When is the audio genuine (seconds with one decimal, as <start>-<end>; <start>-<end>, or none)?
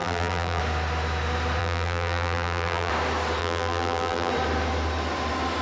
0.6-1.6; 2.9-3.4; 4.3-5.6